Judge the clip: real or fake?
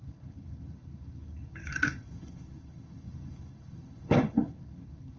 fake